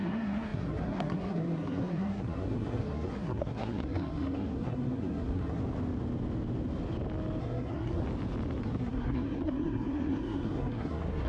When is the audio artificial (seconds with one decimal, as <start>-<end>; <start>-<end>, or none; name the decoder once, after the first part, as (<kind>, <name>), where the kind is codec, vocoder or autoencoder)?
0.0-5.6 (codec, SNAC); 7.4-8.0; 8.6-11.3